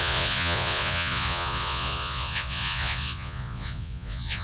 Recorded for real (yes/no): no